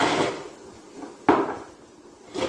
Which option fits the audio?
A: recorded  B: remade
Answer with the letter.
A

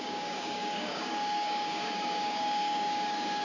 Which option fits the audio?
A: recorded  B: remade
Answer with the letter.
B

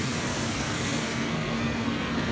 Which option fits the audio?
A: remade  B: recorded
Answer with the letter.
A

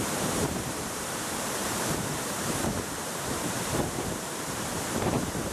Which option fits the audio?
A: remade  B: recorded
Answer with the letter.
A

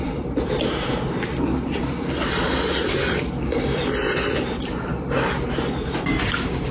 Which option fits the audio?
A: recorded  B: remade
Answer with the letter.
A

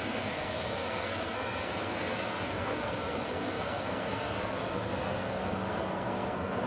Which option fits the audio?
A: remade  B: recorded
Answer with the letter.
A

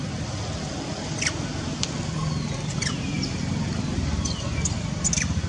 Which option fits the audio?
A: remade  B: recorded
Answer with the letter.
B